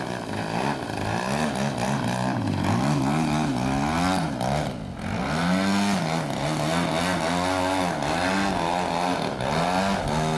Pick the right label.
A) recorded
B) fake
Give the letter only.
A